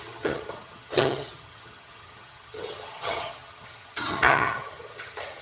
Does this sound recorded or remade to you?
remade